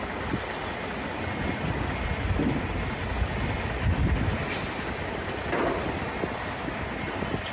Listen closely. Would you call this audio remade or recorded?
recorded